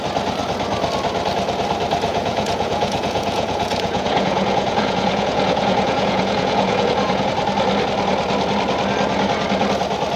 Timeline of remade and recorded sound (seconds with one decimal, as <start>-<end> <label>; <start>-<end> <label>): 0.0-2.1 recorded; 2.1-7.3 remade; 7.3-10.2 recorded